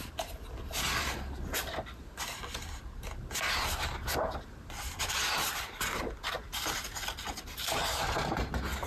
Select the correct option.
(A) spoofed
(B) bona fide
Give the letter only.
B